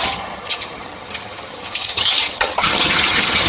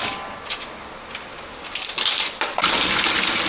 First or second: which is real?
second